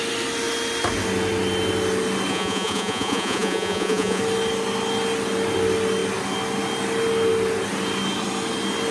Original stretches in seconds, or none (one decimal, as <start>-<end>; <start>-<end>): 0.0-2.3; 4.2-8.9